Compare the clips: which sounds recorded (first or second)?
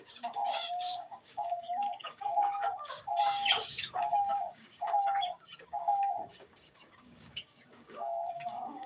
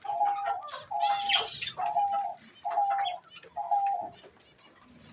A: second